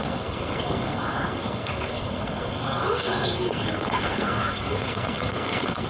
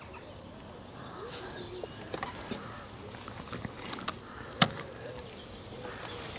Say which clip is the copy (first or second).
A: first